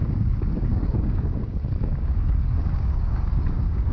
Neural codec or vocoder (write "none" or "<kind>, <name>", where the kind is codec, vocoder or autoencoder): codec, DAC